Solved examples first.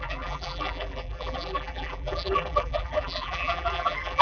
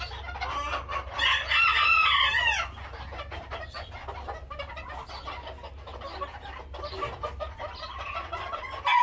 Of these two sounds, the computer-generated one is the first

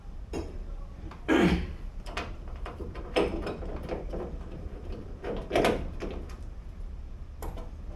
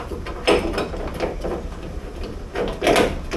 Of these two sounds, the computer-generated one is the first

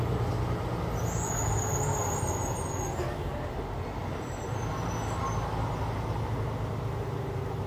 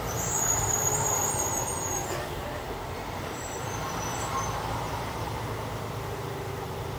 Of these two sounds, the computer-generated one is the second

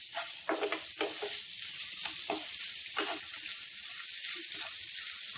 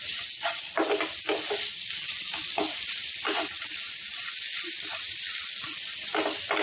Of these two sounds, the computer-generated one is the first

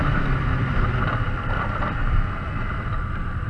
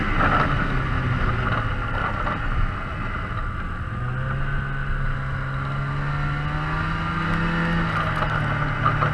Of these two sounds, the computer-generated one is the first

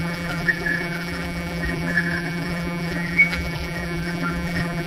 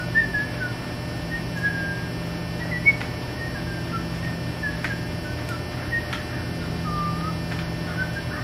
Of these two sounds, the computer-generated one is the first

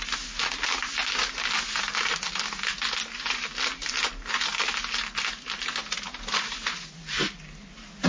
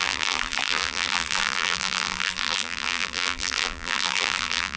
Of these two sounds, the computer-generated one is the second